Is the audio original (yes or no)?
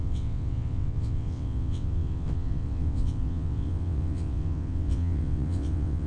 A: no